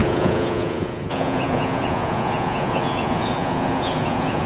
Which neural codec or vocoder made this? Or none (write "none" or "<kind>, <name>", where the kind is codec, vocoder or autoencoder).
vocoder, Vocos